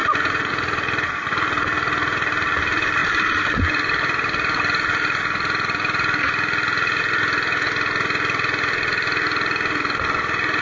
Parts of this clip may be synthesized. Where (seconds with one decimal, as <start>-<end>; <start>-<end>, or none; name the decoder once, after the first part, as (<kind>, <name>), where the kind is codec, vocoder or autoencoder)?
0.0-0.5 (vocoder, Vocos)